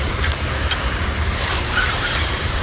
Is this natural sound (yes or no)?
no